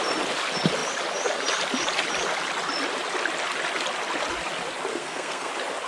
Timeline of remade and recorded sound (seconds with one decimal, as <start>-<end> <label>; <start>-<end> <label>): 0.0-4.9 recorded; 4.9-5.5 remade; 5.5-5.9 recorded